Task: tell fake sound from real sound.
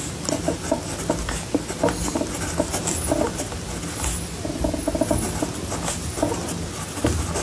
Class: real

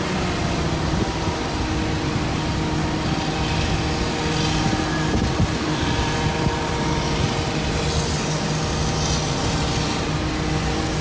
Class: real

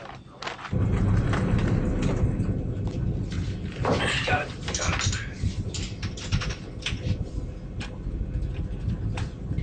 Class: real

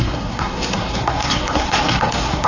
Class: fake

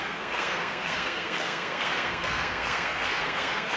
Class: fake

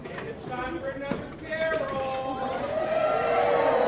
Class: fake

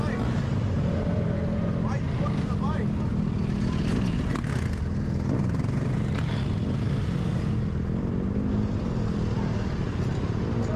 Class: real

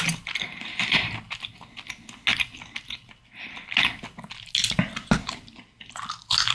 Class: real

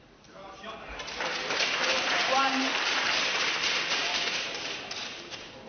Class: fake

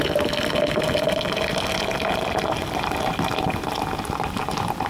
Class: real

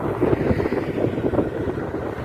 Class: fake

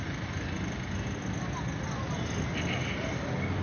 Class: real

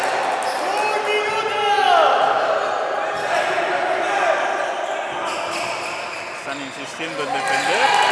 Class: real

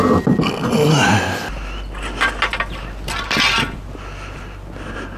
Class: real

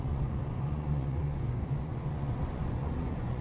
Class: fake